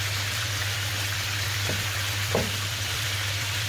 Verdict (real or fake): fake